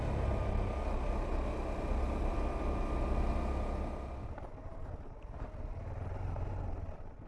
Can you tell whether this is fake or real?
real